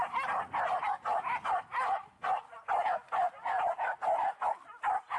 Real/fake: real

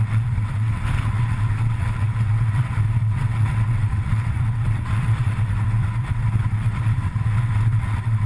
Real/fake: fake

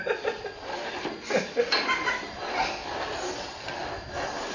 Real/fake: real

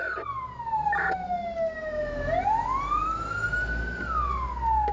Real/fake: real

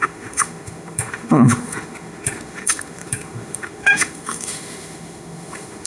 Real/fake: fake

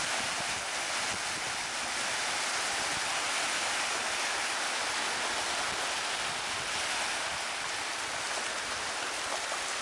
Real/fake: real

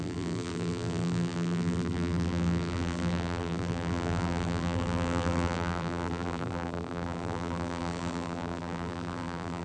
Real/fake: fake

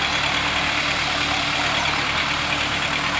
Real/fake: real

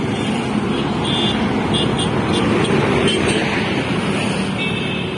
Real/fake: real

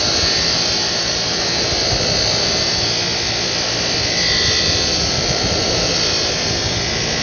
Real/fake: real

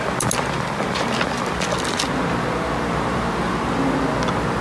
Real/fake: real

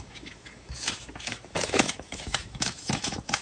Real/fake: fake